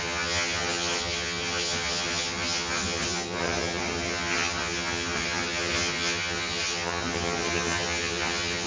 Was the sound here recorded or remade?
remade